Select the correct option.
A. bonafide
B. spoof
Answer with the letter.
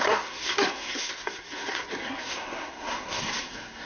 B